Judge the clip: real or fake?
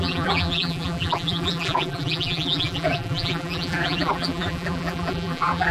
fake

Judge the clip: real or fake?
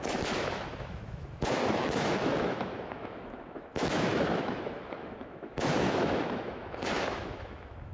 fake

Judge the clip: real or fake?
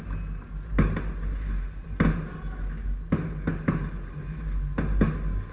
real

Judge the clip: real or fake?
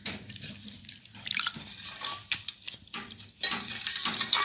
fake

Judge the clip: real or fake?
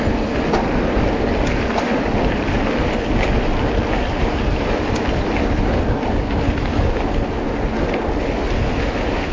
real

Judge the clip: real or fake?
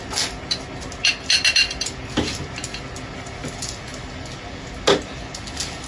real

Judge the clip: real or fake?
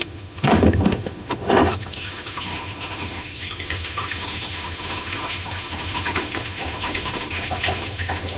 fake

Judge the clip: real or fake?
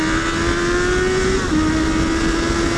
real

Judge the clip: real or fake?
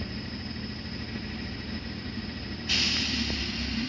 real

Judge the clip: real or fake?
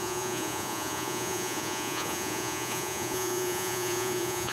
fake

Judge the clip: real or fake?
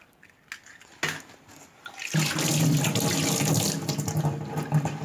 real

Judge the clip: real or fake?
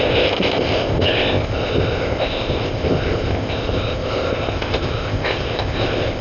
fake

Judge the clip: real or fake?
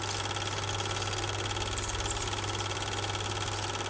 real